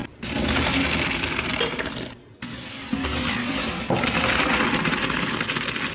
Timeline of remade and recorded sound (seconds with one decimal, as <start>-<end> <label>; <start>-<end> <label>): 0.0-5.9 recorded